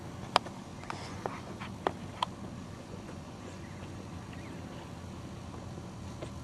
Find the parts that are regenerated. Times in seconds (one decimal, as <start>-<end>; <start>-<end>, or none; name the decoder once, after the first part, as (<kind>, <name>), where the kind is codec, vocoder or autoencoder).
0.7-1.6 (vocoder, Vocos); 2.6-4.1